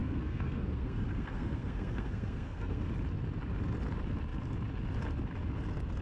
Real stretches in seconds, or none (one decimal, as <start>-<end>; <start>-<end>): 2.9-6.0